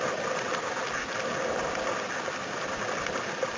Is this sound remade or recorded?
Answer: recorded